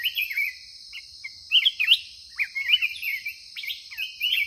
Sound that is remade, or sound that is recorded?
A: recorded